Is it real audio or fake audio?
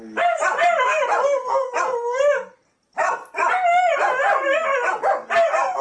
real